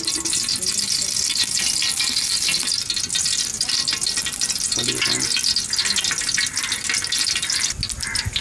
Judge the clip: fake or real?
real